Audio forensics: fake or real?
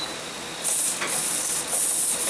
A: real